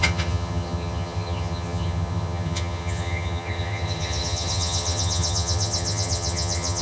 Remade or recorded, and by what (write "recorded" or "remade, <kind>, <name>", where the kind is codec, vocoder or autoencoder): remade, vocoder, HiFi-GAN